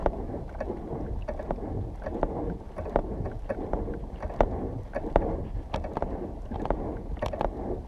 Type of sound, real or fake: real